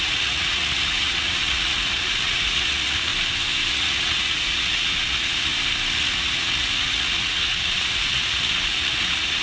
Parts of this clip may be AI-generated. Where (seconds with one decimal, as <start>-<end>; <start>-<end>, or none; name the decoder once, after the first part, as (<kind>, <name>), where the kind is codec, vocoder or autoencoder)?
0.0-3.1 (vocoder, Vocos); 3.7-5.5; 6.0-9.4